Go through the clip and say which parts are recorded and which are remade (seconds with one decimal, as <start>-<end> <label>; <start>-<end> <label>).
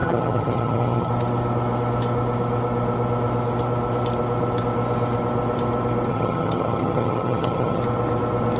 0.0-1.1 remade; 1.1-6.1 recorded; 6.1-7.8 remade; 7.8-8.6 recorded